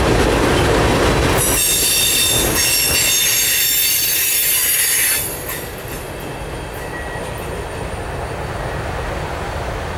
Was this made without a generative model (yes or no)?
yes